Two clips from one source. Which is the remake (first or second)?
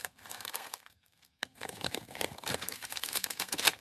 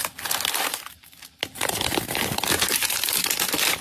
first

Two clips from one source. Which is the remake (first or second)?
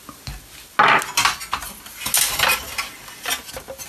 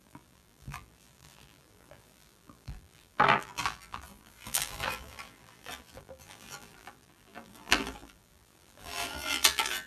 second